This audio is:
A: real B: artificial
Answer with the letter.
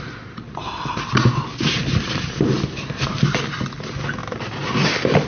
A